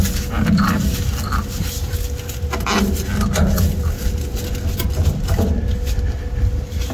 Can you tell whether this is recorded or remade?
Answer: recorded